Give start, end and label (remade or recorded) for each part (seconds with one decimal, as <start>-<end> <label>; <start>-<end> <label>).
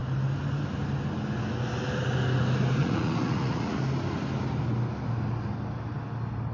0.0-2.8 recorded; 2.8-3.8 remade; 3.8-6.5 recorded